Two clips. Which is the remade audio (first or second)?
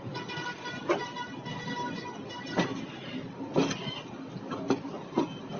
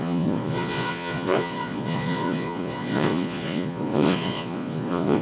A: second